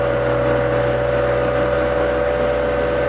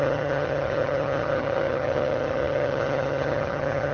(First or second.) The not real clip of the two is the second